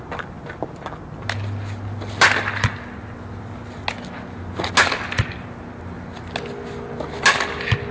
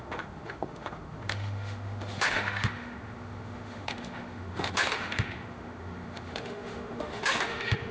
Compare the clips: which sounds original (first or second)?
first